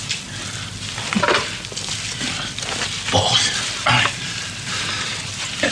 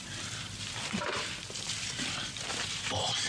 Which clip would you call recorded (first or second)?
first